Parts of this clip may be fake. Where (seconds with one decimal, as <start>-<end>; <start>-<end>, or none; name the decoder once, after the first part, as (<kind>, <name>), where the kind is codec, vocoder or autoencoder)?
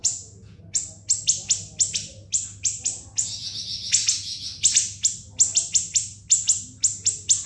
0.0-0.6 (vocoder, Vocos)